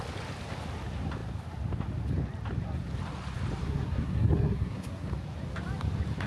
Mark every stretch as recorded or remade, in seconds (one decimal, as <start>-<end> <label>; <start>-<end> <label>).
0.0-3.6 recorded; 3.6-5.1 remade; 5.1-6.3 recorded